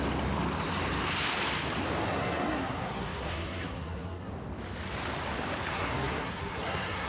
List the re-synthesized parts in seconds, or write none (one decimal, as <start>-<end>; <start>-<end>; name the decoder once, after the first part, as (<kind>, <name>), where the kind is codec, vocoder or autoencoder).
2.0-4.3 (codec, SNAC); 5.7-7.1